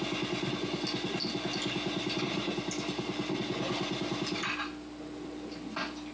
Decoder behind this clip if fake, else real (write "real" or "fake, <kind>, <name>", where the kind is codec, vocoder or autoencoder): real